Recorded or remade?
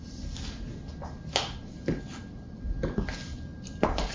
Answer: recorded